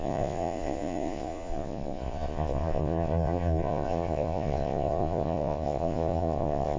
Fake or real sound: fake